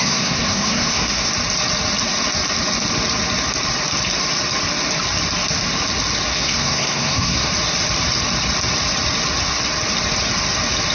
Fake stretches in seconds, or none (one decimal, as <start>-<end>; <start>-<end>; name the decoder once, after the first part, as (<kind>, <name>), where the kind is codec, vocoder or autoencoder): 0.0-1.3 (codec, SNAC); 6.3-7.5